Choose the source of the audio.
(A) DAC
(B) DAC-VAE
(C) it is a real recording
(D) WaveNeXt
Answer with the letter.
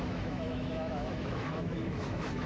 B